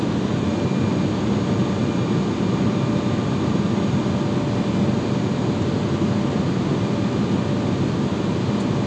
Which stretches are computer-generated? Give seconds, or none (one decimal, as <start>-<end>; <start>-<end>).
none